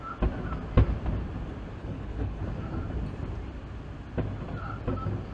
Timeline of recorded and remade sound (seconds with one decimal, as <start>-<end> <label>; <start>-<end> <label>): 0.0-1.8 recorded; 1.8-2.4 remade; 2.4-5.3 recorded